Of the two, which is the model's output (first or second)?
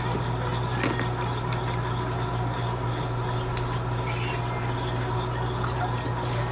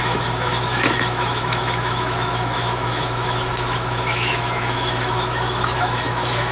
second